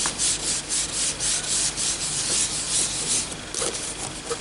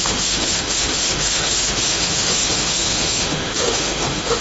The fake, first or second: second